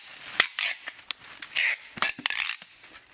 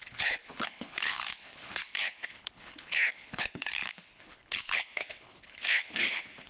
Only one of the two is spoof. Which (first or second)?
second